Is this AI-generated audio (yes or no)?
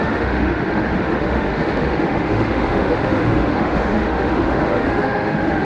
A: yes